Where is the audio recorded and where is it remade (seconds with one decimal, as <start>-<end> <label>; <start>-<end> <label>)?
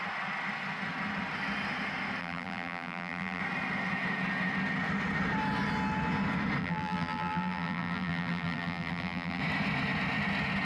0.0-2.2 recorded; 2.2-3.4 remade; 3.4-6.6 recorded; 6.6-9.4 remade; 9.4-10.6 recorded